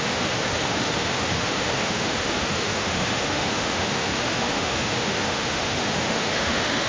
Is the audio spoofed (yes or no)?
yes